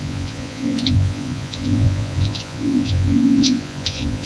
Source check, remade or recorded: remade